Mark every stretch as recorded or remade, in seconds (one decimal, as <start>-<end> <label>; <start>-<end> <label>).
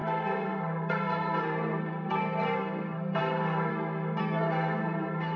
0.0-3.7 remade; 3.7-4.2 recorded; 4.2-5.4 remade